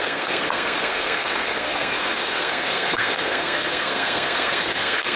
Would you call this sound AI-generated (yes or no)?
yes